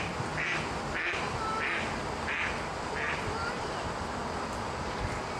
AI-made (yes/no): yes